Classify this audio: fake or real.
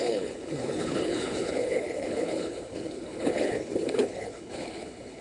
fake